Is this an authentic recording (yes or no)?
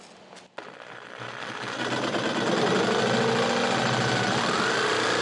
yes